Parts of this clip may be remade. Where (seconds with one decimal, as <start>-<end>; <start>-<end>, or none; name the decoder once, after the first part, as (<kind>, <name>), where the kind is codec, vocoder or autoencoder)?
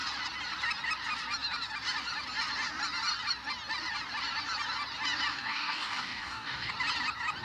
5.3-6.7 (codec, DAC)